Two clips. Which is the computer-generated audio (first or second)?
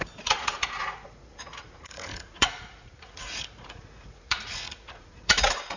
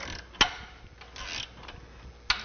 first